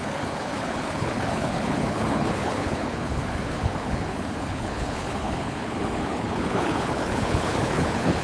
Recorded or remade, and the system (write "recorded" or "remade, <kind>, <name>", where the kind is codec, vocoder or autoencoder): remade, codec, HILCodec